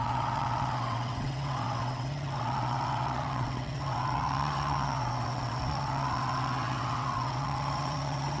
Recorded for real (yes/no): no